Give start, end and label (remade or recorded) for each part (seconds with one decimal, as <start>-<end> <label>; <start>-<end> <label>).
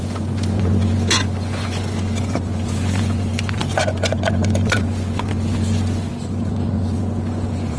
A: 0.0-7.8 remade